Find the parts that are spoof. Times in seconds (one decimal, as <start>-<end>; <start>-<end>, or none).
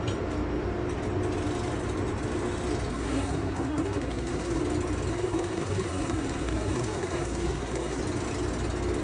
2.9-4.6; 5.1-8.0